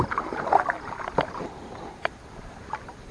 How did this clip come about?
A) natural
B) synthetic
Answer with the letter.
A